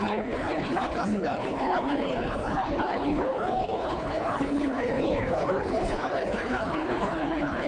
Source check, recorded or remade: remade